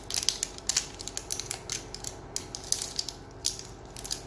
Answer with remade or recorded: recorded